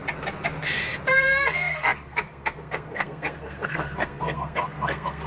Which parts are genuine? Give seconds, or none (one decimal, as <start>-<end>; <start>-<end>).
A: 0.0-1.1